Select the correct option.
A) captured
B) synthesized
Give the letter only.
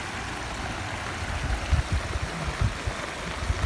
A